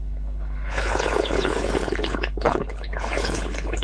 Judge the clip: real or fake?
fake